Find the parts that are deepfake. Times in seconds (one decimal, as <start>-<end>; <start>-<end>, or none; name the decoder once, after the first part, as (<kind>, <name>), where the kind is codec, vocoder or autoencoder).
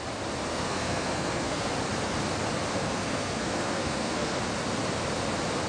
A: 0.5-1.7 (codec, SNAC); 2.7-4.4